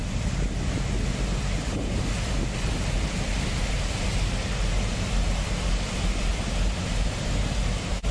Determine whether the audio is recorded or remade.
recorded